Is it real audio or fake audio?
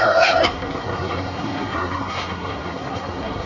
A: fake